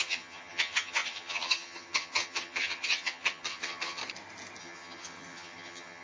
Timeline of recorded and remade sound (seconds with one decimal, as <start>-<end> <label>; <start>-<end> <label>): 0.0-4.0 remade; 4.0-4.6 recorded; 4.6-6.0 remade